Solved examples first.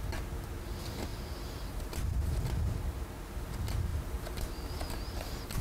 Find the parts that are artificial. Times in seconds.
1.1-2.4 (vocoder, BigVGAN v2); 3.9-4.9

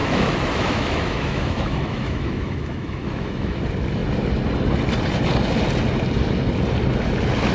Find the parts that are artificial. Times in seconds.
0.0-3.6 (autoencoder, DAC-VAE)